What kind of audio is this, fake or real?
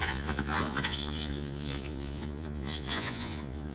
fake